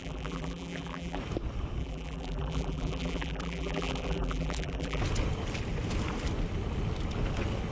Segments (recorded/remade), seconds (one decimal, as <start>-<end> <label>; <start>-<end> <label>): 0.0-1.2 remade; 1.2-1.8 recorded; 1.8-5.0 remade; 5.0-7.7 recorded